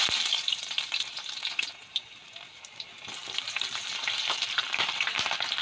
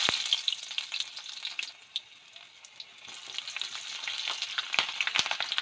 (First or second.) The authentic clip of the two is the second